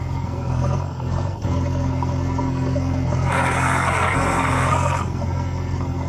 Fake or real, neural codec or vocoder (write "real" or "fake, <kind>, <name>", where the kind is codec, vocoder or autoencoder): fake, codec, SNAC